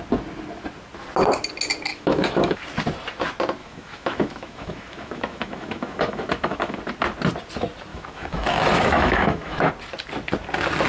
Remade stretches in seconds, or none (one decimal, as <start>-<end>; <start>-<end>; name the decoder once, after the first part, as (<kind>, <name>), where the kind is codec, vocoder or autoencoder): 1.9-2.6 (autoencoder, DAC-VAE); 3.6-6.8; 7.9-9.7